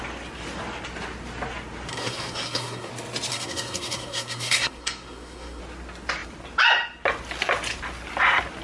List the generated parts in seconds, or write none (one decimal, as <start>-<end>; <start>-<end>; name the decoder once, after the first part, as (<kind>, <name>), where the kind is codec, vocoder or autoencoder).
1.9-2.9 (codec, SNAC); 3.3-5.6